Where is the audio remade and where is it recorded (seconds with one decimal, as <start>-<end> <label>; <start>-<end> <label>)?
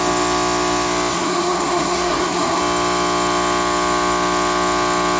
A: 0.0-1.1 recorded; 1.1-2.6 remade; 2.6-5.2 recorded